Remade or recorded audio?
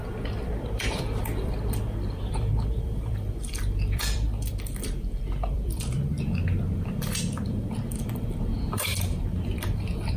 remade